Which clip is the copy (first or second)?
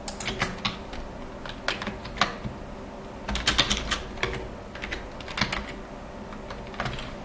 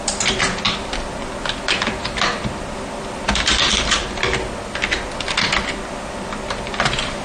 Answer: second